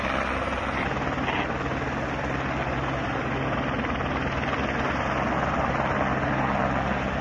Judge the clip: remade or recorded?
recorded